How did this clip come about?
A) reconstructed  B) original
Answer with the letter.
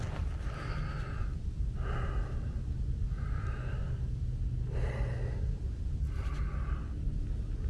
B